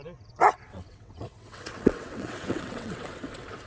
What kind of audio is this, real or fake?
fake